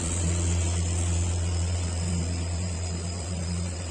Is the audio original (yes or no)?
no